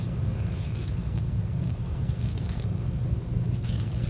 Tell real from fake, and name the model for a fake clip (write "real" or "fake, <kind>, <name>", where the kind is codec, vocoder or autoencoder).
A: fake, codec, SNAC